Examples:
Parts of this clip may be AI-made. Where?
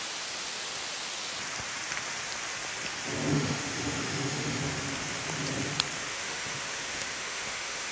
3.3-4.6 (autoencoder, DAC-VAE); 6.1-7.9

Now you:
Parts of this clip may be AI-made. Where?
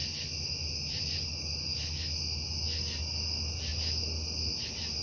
none